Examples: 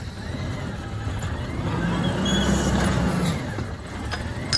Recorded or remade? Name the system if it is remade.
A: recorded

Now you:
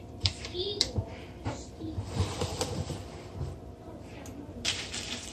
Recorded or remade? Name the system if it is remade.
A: remade, vocoder, BigVGAN v2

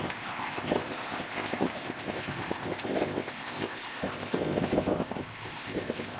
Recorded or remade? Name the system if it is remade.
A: remade, codec, ZipCodec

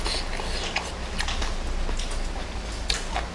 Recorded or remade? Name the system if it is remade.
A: recorded